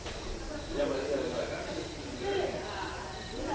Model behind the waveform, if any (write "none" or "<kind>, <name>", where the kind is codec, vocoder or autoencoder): none